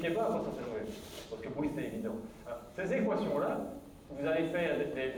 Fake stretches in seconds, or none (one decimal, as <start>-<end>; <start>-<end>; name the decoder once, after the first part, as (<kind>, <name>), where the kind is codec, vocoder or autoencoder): none